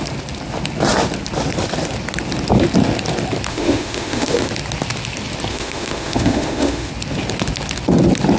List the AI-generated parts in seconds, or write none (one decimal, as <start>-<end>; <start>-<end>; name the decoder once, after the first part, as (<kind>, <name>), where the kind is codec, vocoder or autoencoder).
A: 3.5-4.5 (autoencoder, DAC-VAE); 5.5-6.9